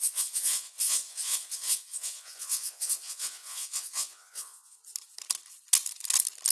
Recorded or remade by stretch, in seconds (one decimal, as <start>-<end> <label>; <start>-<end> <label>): 0.0-4.8 remade; 4.8-6.5 recorded